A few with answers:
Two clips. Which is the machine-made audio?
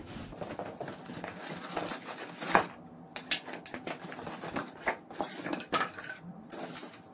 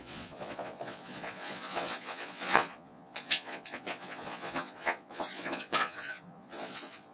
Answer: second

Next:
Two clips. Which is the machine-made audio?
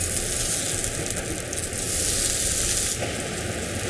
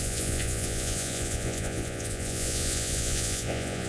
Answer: second